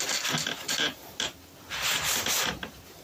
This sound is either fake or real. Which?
real